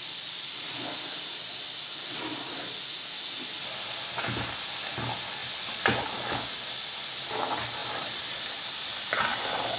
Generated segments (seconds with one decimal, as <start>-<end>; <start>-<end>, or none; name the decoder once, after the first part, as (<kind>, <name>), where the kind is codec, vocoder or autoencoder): 7.8-9.8 (vocoder, BigVGAN v2)